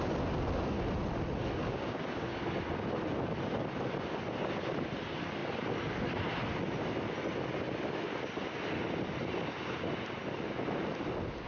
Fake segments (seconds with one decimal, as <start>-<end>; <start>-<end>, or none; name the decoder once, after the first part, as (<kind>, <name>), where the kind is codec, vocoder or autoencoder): 1.6-2.4 (codec, DAC)